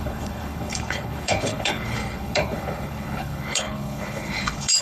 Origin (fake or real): fake